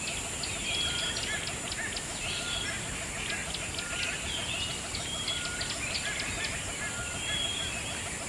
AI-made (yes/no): no